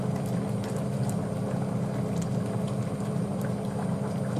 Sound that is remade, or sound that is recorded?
recorded